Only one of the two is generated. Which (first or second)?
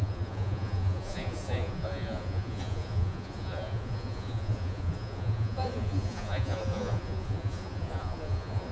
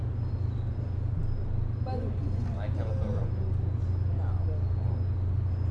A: first